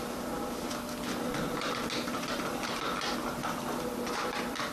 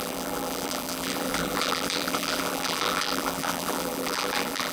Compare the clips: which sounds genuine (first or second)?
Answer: first